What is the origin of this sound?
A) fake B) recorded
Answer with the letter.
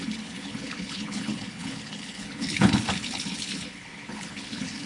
A